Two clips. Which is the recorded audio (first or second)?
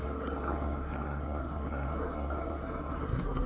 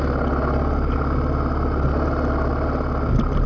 second